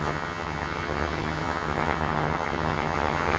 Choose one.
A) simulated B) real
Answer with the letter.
A